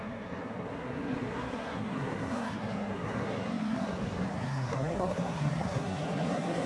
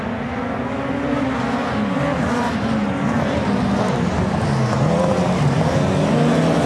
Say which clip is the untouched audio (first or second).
second